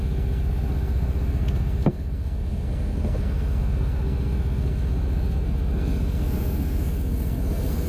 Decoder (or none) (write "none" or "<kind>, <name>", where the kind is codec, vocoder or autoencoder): codec, SNAC